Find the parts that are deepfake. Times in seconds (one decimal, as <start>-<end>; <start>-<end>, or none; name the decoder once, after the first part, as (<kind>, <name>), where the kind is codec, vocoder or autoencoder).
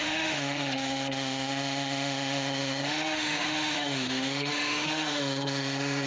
0.0-6.1 (autoencoder, DAC-VAE)